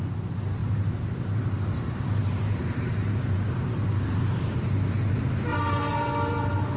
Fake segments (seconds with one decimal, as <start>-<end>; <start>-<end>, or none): 0.6-4.6; 5.5-6.8